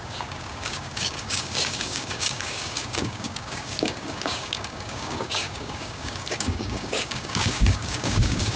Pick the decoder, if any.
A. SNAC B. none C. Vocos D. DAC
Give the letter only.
D